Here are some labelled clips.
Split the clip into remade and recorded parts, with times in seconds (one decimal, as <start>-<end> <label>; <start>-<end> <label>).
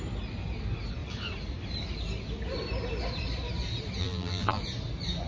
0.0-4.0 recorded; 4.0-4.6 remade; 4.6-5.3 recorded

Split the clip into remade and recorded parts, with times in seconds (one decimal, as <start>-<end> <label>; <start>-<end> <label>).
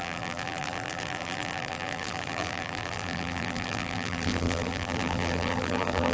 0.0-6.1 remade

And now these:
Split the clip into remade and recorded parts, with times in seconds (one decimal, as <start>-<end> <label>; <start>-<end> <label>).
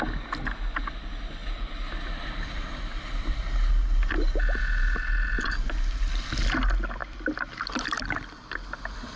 0.0-1.4 recorded; 1.4-3.4 remade; 3.4-7.0 recorded; 7.0-8.0 remade; 8.0-9.2 recorded